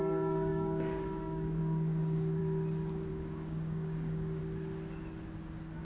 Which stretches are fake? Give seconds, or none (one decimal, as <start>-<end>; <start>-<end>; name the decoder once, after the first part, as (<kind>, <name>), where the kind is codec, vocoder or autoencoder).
0.0-2.4 (codec, DAC); 3.1-4.4